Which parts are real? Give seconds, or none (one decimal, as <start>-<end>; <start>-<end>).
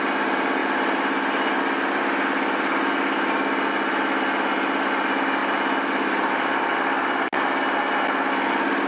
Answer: 0.0-8.9